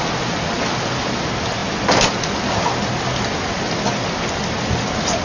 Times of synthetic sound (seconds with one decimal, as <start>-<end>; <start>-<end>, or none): none